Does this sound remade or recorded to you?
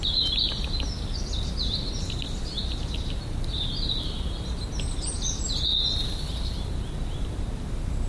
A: recorded